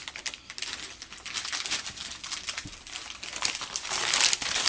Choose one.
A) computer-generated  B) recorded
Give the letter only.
A